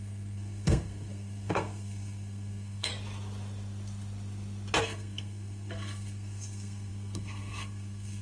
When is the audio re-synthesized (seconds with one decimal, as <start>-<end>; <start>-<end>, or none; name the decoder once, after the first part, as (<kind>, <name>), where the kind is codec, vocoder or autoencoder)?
0.0-2.9 (codec, SNAC); 4.8-8.2